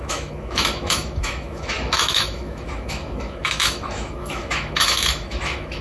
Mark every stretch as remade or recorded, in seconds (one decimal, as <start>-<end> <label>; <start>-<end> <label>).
0.0-5.8 remade